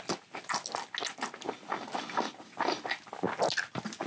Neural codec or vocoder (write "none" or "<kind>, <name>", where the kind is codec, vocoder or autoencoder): none